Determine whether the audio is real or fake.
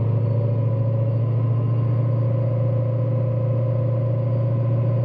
real